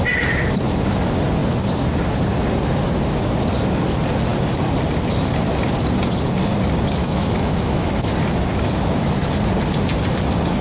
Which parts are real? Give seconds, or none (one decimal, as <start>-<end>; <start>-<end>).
0.0-7.0; 8.1-10.6